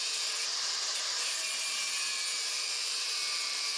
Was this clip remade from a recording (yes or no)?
yes